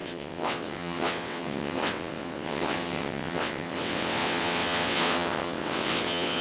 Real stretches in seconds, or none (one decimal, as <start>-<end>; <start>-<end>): none